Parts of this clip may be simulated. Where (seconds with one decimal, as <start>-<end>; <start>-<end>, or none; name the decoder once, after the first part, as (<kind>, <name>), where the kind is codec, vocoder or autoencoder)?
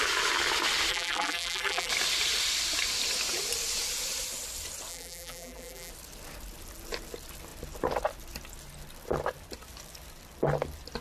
0.9-1.9 (vocoder, BigVGAN v2); 4.9-5.9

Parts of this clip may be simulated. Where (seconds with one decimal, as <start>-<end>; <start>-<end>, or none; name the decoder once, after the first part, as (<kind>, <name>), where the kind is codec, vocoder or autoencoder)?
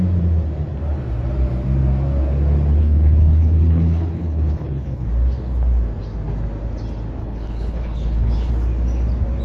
2.8-5.1 (codec, HILCodec); 7.2-8.5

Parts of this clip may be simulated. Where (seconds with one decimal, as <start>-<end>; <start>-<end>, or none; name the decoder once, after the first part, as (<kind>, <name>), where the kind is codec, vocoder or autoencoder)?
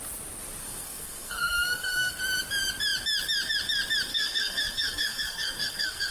0.6-2.2 (codec, SNAC); 4.1-6.1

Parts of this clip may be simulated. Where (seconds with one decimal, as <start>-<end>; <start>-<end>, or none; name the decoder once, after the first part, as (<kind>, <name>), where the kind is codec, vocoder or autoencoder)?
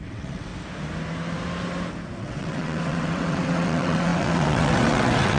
0.0-0.5 (vocoder, WaveNeXt); 2.2-5.4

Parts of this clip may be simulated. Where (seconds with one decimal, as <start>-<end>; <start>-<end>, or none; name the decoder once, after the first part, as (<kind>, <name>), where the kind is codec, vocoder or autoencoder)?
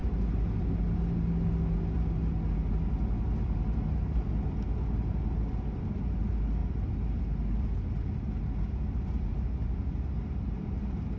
none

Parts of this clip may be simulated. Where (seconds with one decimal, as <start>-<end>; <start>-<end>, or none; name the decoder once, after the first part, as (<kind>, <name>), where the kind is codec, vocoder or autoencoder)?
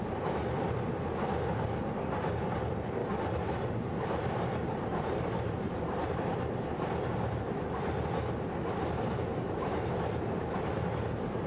4.5-6.9 (vocoder, BigVGAN v2); 9.3-9.9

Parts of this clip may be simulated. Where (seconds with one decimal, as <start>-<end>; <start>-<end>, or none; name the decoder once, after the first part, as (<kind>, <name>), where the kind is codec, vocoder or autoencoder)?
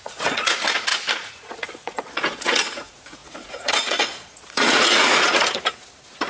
0.0-6.3 (vocoder, Vocos)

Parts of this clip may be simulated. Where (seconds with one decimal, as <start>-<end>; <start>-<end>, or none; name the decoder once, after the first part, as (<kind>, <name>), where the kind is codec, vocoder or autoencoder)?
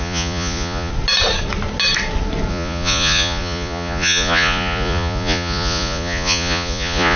0.0-0.9 (vocoder, Vocos); 2.5-7.2